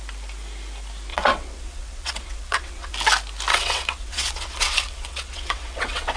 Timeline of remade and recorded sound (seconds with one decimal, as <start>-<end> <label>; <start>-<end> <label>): 0.0-1.1 recorded; 1.1-2.9 remade; 2.9-3.5 recorded; 3.5-6.2 remade